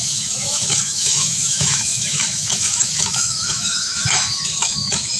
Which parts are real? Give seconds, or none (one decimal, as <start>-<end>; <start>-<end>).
none